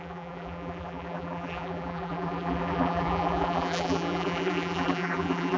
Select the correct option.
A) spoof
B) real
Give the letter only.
A